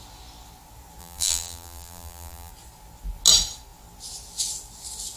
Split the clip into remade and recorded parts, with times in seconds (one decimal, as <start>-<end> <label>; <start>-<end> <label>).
0.0-1.0 recorded; 1.0-2.5 remade; 2.5-5.2 recorded